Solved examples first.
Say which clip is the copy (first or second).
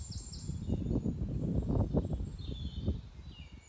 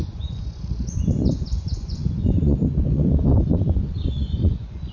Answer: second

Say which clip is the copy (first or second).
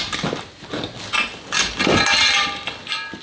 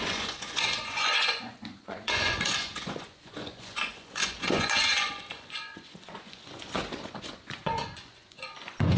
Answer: second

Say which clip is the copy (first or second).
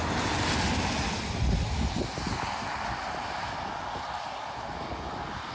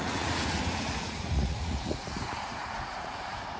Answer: second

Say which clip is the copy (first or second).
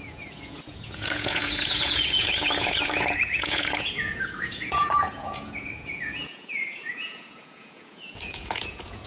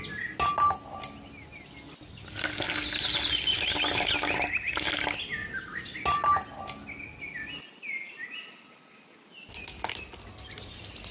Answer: first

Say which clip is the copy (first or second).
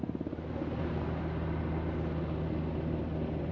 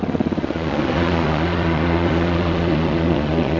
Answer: second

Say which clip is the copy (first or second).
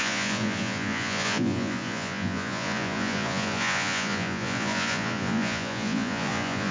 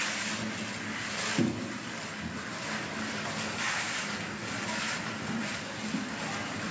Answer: first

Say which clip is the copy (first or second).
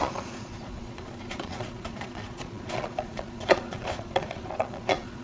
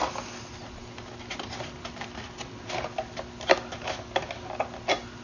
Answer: first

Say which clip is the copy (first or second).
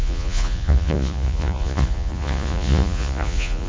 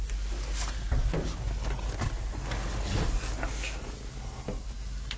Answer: first